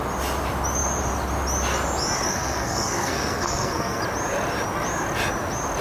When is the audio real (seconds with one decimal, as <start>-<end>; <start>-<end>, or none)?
0.0-2.3; 4.0-5.8